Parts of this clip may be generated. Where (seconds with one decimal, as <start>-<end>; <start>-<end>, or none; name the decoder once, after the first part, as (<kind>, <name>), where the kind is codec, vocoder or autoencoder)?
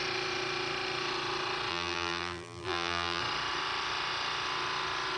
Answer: 1.7-3.2 (vocoder, BigVGAN v2)